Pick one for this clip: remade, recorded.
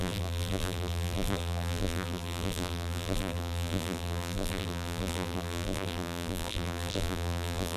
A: remade